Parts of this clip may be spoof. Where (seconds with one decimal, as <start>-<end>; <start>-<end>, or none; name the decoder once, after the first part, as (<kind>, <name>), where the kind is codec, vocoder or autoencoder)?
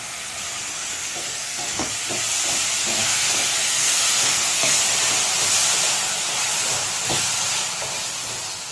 0.7-1.9 (codec, SNAC); 2.8-4.8